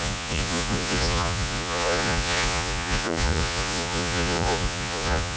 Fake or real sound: fake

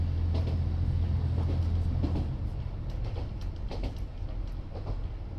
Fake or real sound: real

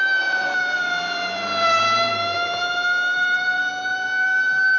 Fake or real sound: real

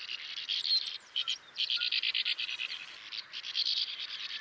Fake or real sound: real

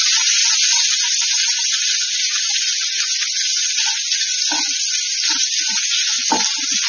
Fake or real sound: real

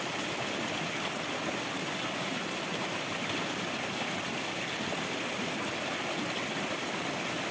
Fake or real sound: real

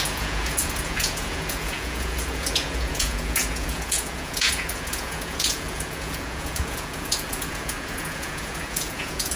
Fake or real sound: fake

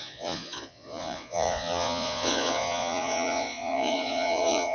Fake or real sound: fake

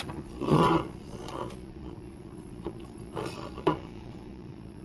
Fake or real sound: fake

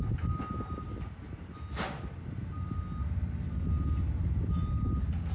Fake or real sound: real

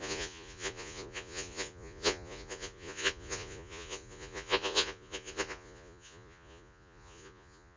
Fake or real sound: fake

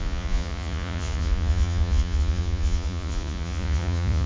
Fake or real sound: fake